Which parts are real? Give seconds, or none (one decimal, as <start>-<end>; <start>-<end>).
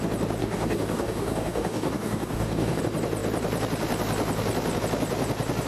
0.0-0.4; 2.8-5.7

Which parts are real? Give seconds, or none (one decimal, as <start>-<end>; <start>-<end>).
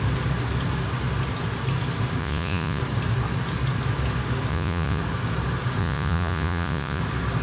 0.0-2.2; 2.8-4.5; 5.0-5.8; 7.0-7.4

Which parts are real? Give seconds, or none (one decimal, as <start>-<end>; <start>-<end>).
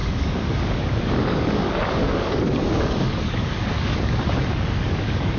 none